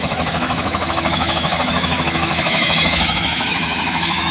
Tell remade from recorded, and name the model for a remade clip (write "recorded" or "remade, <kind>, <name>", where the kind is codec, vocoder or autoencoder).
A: remade, autoencoder, DAC-VAE